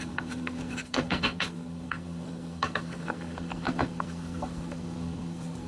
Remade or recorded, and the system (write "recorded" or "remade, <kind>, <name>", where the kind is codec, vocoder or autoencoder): remade, codec, SNAC